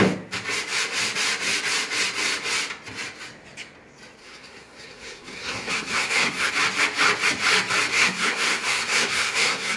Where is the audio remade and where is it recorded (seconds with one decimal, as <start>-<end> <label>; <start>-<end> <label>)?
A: 0.0-4.2 recorded; 4.2-6.5 remade; 6.5-7.9 recorded; 7.9-9.8 remade

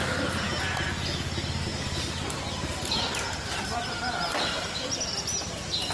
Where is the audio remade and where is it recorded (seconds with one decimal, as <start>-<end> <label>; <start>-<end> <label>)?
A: 0.0-5.9 recorded

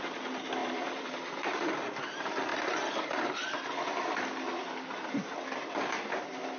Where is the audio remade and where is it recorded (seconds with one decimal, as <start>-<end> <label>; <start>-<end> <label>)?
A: 0.0-0.6 recorded; 0.6-1.4 remade; 1.4-2.5 recorded; 2.5-5.7 remade; 5.7-6.6 recorded

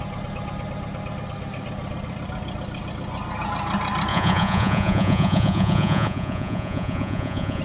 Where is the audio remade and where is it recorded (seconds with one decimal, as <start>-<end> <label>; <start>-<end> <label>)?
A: 0.0-4.1 recorded; 4.1-7.6 remade

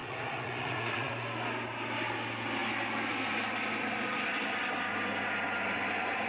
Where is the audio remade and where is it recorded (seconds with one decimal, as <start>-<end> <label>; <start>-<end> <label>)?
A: 0.0-1.1 remade; 1.1-6.3 recorded